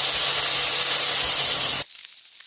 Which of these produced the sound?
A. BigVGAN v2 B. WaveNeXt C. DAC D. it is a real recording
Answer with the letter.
D